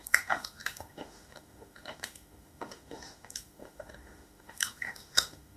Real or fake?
fake